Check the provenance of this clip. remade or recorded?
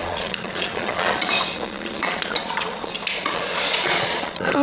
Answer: remade